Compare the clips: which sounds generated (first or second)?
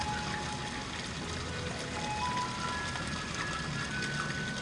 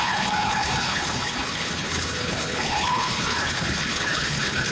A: second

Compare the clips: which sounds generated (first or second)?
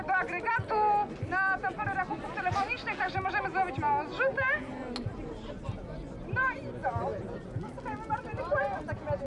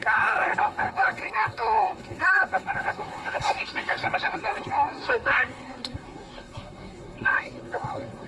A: second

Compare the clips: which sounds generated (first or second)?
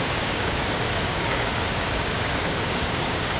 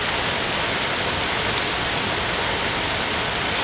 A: first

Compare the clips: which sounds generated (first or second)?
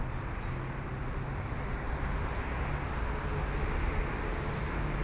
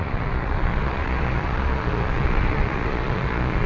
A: second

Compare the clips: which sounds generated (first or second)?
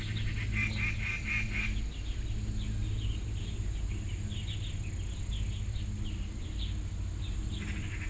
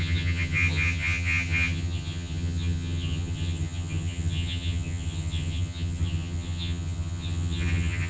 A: second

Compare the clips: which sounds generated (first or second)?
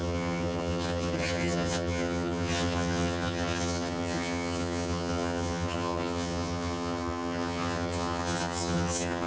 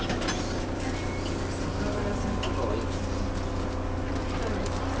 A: first